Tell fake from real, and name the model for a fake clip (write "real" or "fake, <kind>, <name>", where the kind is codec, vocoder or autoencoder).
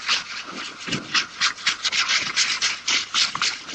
real